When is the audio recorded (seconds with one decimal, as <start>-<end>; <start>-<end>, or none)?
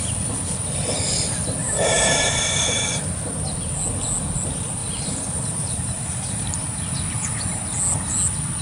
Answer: 0.0-1.6; 3.0-4.8; 6.8-8.6